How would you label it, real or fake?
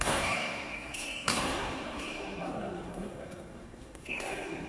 fake